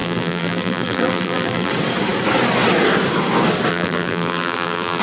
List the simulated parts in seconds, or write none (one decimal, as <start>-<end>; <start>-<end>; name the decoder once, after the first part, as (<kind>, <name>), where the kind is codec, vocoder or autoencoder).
0.0-1.7 (vocoder, BigVGAN v2); 3.7-5.0